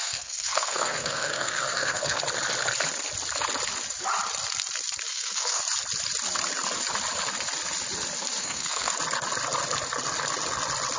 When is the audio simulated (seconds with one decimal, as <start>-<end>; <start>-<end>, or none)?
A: 0.0-2.2; 5.1-5.6; 8.4-8.9